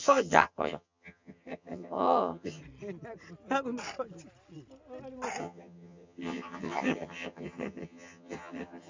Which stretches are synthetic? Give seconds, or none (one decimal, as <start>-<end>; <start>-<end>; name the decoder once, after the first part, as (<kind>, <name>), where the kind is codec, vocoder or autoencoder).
0.0-2.6 (vocoder, HiFi-GAN); 5.4-8.9